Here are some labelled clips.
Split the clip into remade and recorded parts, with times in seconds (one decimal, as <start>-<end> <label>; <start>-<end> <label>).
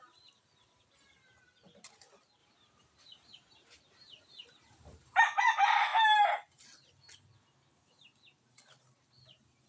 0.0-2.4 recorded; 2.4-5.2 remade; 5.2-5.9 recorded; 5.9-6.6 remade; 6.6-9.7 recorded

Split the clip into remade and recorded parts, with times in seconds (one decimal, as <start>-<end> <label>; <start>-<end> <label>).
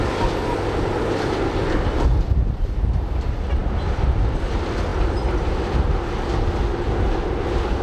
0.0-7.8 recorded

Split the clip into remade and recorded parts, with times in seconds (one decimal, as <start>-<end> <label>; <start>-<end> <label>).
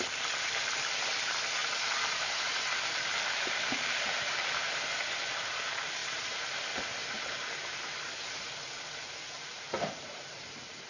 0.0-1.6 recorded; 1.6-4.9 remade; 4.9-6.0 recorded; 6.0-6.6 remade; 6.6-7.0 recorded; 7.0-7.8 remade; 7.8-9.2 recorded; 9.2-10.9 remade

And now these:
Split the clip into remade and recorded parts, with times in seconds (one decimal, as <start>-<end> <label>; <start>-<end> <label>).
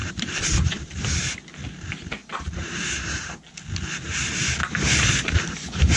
0.0-1.0 remade; 1.0-2.2 recorded; 2.2-3.2 remade; 3.2-4.6 recorded; 4.6-6.0 remade